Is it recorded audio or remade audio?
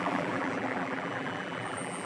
remade